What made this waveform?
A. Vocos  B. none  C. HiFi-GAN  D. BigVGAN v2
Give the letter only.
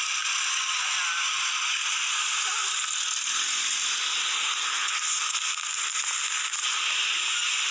B